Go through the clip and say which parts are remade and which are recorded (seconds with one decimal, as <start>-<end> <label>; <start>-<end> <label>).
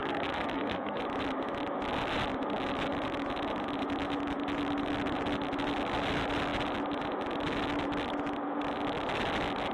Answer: 0.0-1.0 remade; 1.0-9.7 recorded